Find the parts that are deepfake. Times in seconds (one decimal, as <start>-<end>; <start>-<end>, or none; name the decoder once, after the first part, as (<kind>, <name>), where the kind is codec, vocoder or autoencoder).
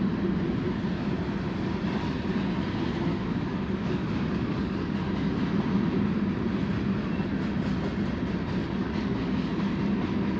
3.1-5.0 (codec, DAC); 8.6-9.7